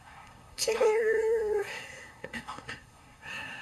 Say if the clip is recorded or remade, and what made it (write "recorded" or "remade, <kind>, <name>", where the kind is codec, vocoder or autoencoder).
remade, codec, SNAC